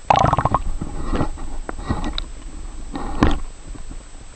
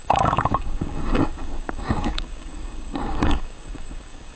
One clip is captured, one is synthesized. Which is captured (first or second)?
first